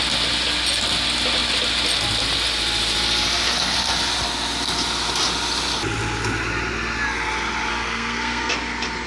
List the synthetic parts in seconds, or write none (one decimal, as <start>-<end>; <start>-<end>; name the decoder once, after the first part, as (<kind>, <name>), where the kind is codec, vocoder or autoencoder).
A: 7.7-8.5 (codec, SNAC)